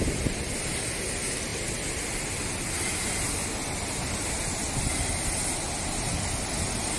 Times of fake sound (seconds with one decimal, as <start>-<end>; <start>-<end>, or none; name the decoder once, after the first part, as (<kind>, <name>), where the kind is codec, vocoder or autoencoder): none